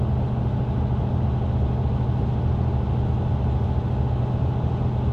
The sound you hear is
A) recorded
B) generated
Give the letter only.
A